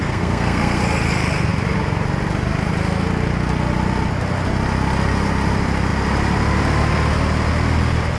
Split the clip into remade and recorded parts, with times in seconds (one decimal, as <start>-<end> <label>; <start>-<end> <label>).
0.0-0.8 remade; 0.8-8.2 recorded